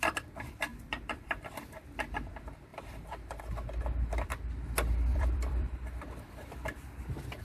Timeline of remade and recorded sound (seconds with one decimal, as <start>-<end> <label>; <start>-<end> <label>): 0.0-0.7 recorded; 0.7-2.3 remade; 2.3-2.7 recorded; 2.7-3.4 remade; 3.4-5.1 recorded; 5.1-6.4 remade; 6.4-7.4 recorded